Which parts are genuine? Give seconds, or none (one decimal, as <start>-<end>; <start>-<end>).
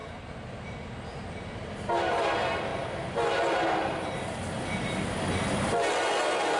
1.7-6.6